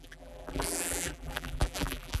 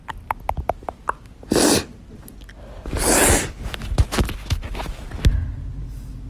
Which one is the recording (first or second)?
second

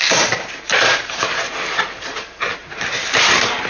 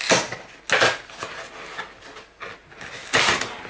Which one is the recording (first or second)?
second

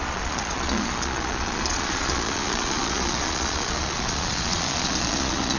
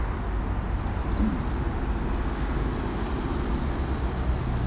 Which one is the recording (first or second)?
second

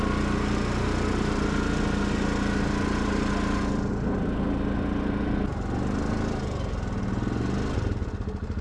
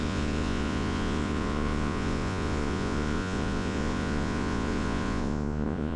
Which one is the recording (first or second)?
first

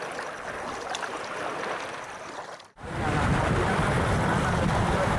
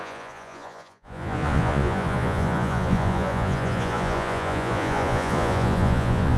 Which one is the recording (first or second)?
first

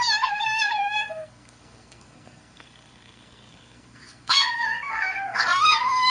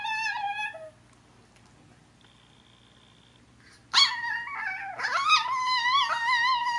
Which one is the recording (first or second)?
second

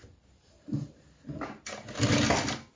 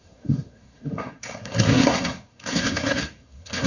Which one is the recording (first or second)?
first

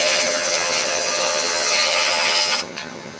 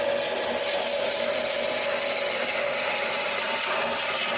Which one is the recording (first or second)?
second